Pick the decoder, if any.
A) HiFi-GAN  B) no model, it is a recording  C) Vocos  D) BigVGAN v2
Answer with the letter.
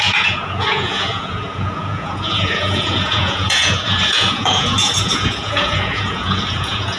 C